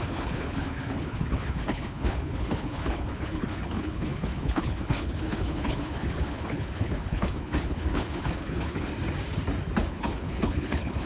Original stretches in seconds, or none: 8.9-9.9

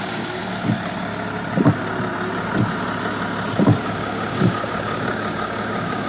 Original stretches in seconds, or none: 0.4-3.8

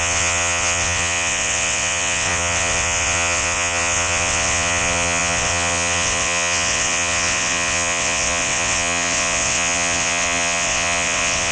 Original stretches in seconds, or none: none

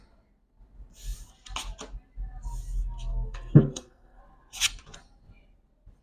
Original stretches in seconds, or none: 0.0-3.1; 4.2-6.0

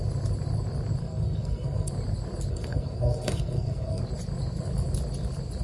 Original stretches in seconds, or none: 0.0-1.0; 1.9-2.5; 4.0-5.6

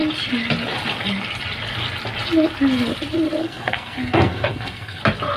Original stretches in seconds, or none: 0.0-3.4; 5.0-5.4

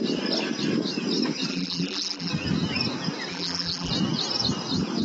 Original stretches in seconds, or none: 0.0-1.5; 2.3-3.3; 3.9-5.0